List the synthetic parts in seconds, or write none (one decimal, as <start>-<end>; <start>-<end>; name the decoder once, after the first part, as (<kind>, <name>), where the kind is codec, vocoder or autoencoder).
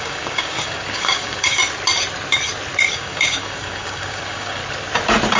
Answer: 0.0-1.6 (codec, DAC); 2.9-4.6